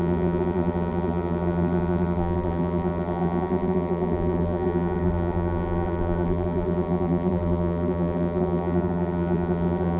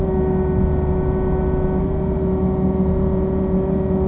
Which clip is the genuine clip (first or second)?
second